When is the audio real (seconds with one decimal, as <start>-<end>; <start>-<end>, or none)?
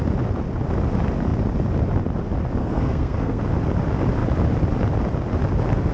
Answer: 0.0-2.6; 3.4-5.9